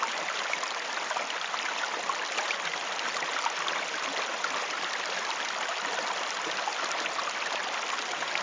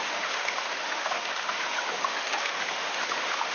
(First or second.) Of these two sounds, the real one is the first